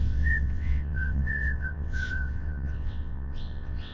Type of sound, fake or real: fake